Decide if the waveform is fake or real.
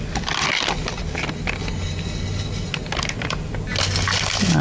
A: real